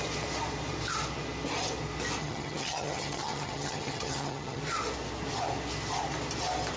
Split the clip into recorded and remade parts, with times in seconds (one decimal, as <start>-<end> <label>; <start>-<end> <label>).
0.0-2.2 recorded; 2.2-4.6 remade; 4.6-6.8 recorded